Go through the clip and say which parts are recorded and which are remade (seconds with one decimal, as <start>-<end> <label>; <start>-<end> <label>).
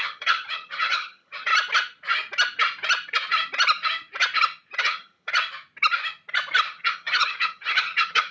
0.0-1.5 remade; 1.5-4.8 recorded; 4.8-5.3 remade; 5.3-6.7 recorded; 6.7-8.3 remade